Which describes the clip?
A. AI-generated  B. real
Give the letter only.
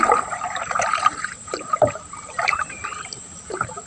A